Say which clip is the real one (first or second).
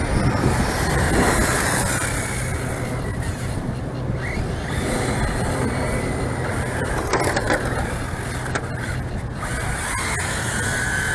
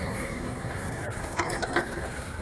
first